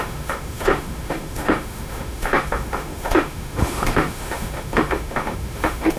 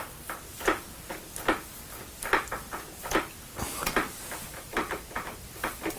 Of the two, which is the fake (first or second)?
first